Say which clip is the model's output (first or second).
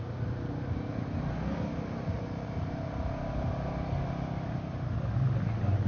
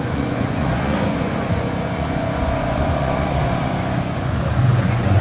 second